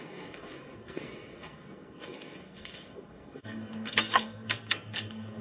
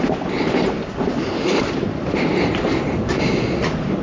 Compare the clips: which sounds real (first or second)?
second